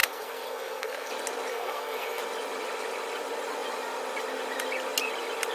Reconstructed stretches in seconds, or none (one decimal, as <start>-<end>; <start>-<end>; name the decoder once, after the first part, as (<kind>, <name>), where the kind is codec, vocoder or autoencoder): 0.0-1.1 (codec, SNAC); 1.5-2.2